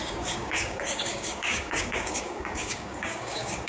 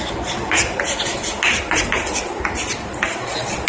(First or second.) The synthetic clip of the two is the first